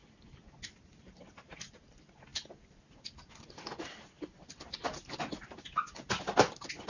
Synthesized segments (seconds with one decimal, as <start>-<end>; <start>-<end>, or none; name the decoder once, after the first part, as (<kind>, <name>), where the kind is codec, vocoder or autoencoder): none